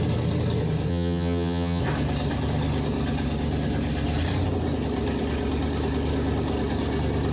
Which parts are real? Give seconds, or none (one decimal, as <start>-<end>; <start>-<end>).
0.0-0.9; 1.8-7.3

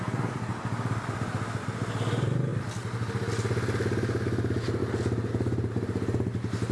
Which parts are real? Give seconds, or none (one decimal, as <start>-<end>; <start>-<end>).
0.0-6.7

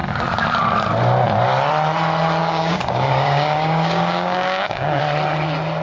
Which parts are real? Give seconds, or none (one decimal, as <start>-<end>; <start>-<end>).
0.0-2.4; 5.0-5.8

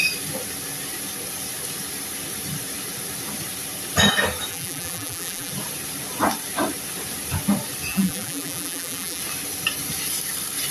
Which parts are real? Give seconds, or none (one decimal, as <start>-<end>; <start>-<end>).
0.0-4.5; 5.5-7.9; 9.2-10.7